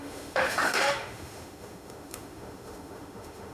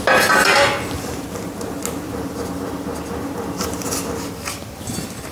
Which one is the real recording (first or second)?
second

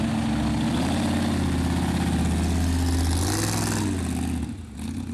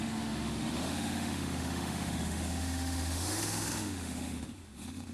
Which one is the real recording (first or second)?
first